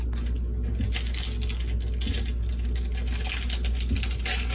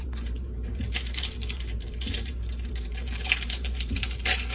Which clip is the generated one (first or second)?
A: second